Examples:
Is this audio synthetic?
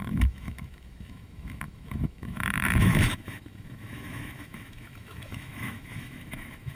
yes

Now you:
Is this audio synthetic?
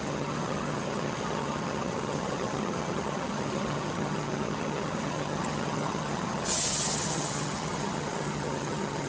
yes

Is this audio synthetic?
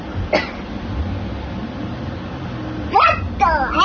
no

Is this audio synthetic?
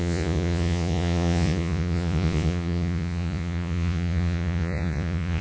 yes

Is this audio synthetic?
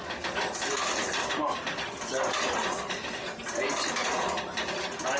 no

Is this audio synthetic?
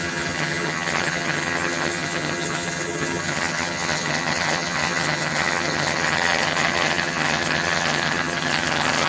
yes